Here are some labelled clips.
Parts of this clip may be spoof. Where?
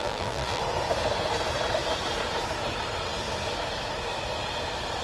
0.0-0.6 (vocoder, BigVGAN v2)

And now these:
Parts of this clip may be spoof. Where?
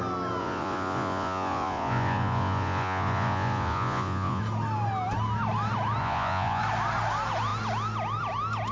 0.4-4.4 (vocoder, Vocos); 6.0-6.6